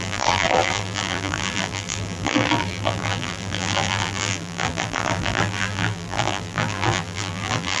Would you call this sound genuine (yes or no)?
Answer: no